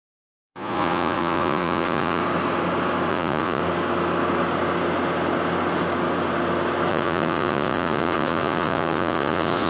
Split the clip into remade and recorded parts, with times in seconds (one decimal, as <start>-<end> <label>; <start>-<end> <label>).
0.0-2.2 remade; 2.2-3.1 recorded; 3.1-3.6 remade; 3.6-6.9 recorded; 6.9-9.7 remade